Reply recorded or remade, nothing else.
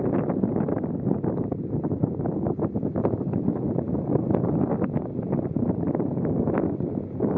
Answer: recorded